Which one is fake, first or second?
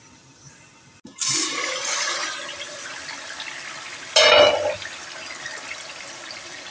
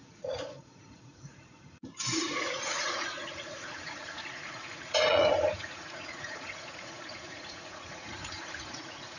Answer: second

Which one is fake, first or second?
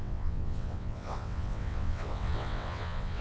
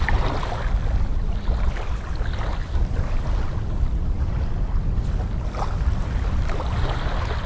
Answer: first